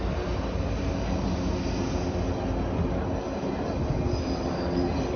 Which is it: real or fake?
real